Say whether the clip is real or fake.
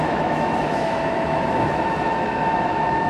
fake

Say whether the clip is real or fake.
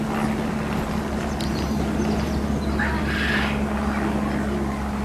real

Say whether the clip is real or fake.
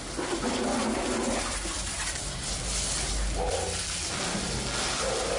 real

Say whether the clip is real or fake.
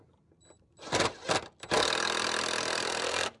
real